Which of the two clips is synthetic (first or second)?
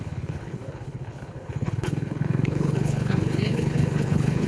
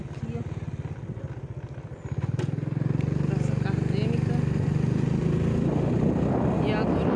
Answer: first